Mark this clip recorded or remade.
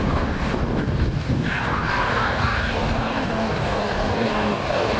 remade